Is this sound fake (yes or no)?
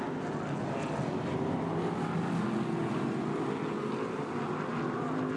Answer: no